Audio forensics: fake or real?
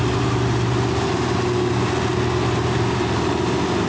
real